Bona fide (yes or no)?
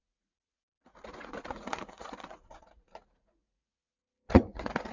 no